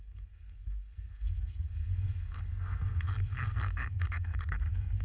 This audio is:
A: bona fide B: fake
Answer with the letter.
B